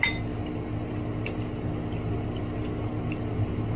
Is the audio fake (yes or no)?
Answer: no